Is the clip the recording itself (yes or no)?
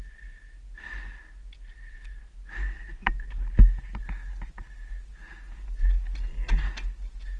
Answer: yes